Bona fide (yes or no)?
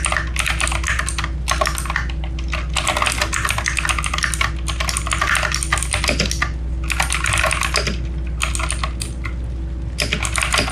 yes